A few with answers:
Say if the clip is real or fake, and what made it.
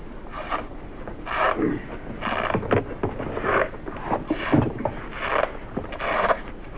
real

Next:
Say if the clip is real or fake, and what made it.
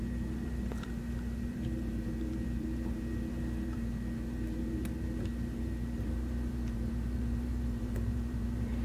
fake, vocoder, BigVGAN v2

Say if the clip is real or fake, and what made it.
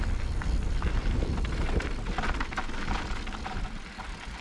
real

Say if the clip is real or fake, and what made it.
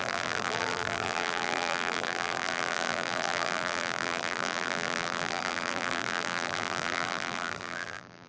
fake, vocoder, BigVGAN v2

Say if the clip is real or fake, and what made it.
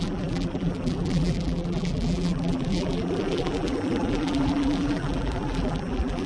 fake, vocoder, BigVGAN v2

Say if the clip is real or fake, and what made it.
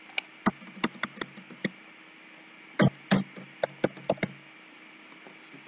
real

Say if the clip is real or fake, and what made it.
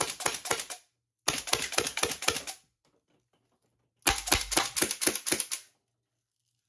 real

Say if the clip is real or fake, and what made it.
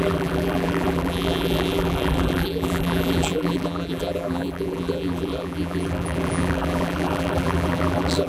fake, vocoder, BigVGAN v2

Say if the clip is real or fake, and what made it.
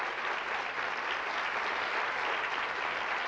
real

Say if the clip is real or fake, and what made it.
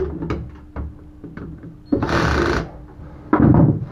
real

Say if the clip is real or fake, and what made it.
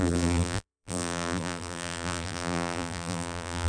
fake, vocoder, BigVGAN v2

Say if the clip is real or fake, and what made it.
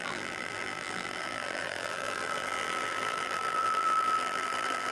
fake, vocoder, BigVGAN v2